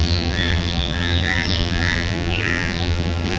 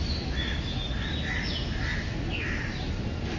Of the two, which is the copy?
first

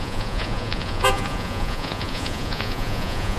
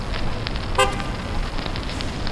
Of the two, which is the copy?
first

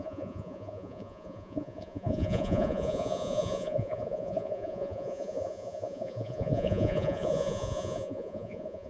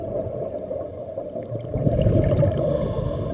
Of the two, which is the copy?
first